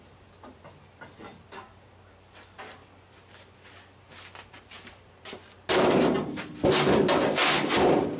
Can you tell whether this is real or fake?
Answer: real